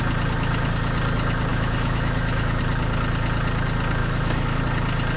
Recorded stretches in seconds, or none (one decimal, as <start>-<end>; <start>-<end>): 0.0-1.5; 2.6-4.0; 4.6-5.2